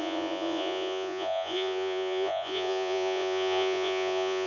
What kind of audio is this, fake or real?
fake